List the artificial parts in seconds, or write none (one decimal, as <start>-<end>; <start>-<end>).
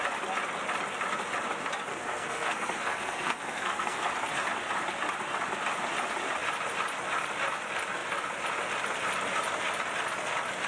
1.9-4.1